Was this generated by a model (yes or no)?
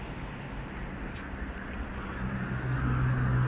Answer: no